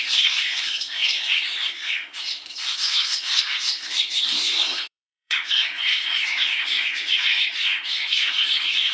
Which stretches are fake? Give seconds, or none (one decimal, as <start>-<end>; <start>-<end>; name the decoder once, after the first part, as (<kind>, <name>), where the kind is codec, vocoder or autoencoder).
0.0-8.9 (codec, SNAC)